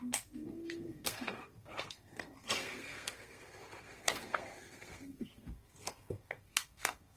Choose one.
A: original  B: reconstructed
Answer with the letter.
B